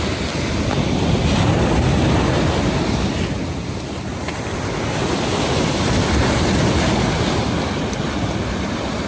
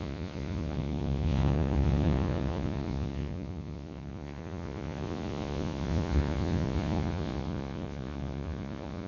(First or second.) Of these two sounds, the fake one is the second